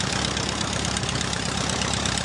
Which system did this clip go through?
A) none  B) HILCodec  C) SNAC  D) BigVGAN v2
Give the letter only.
D